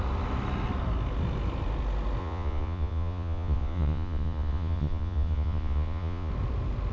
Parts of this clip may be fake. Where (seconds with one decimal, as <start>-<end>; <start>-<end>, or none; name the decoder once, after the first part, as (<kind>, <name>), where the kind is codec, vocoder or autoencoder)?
2.2-6.3 (vocoder, Vocos)